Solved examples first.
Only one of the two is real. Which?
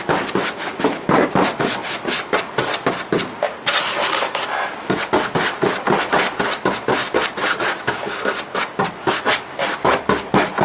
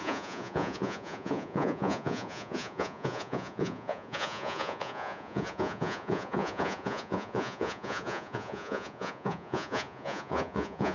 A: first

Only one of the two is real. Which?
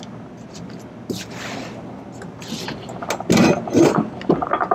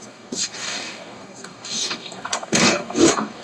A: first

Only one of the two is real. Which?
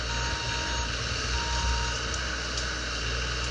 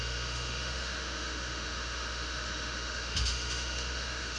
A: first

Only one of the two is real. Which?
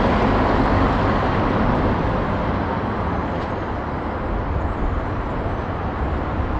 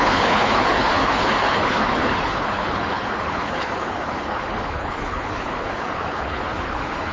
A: first